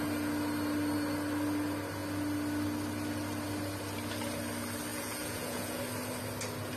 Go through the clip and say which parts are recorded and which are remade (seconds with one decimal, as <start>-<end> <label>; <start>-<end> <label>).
0.0-4.9 recorded; 4.9-5.8 remade; 5.8-6.8 recorded